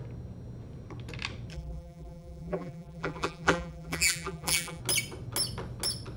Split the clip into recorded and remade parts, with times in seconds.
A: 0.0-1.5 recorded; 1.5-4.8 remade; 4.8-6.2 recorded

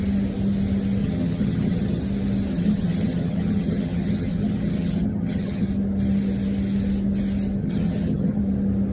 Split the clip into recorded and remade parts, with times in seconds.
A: 0.0-1.0 recorded; 1.0-2.0 remade; 2.0-2.5 recorded; 2.5-5.7 remade; 5.7-7.6 recorded; 7.6-8.4 remade; 8.4-8.9 recorded